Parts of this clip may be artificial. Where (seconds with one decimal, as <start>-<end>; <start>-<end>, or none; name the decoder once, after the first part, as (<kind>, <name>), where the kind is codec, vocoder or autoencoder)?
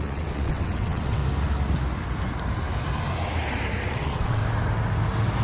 0.0-1.2 (vocoder, WaveNeXt); 3.9-4.4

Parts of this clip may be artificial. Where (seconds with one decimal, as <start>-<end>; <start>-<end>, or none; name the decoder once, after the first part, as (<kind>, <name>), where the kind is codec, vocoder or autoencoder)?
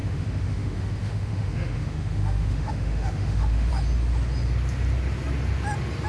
0.0-3.7 (autoencoder, DAC-VAE)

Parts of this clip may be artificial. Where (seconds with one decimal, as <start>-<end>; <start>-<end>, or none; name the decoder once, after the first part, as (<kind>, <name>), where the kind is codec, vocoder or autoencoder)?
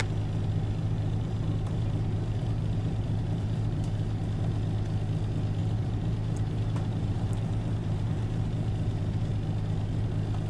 0.8-4.2 (vocoder, BigVGAN v2); 5.6-9.3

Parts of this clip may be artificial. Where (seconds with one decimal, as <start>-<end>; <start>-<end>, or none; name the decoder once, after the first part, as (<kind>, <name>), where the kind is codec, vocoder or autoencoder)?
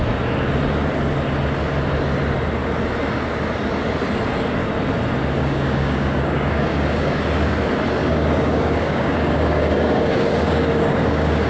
5.4-7.2 (codec, DAC); 8.0-11.5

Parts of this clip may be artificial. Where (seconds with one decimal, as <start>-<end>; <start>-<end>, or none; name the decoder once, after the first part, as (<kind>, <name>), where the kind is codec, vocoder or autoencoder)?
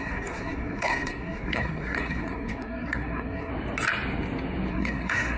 0.0-3.5 (codec, SNAC); 4.7-5.4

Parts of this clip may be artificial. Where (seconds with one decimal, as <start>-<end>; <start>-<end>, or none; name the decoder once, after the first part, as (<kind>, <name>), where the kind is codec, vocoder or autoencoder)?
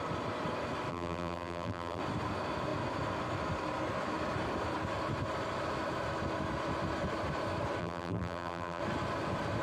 0.9-2.0 (vocoder, BigVGAN v2); 7.8-8.8